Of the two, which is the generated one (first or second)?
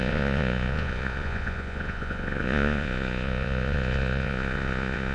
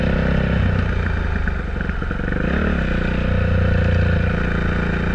first